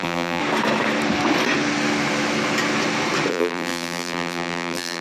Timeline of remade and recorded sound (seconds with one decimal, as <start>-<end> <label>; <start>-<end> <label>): 0.0-0.4 remade; 0.4-3.3 recorded; 3.3-5.0 remade